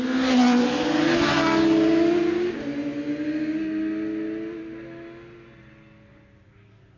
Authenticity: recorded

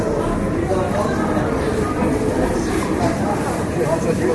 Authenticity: recorded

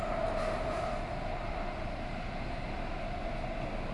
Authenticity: recorded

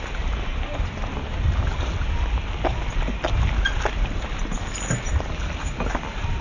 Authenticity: recorded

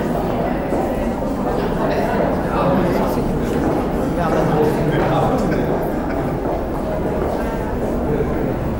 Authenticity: recorded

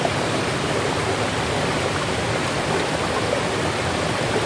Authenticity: recorded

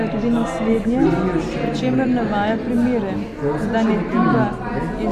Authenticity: recorded